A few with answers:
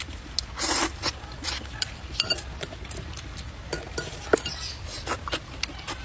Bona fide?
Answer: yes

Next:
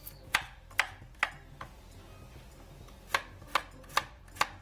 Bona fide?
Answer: yes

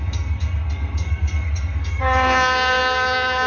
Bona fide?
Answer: no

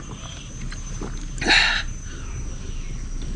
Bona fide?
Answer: yes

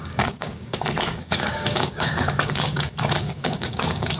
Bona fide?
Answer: no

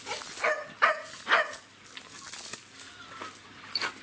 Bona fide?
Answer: yes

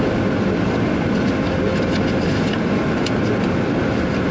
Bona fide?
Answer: no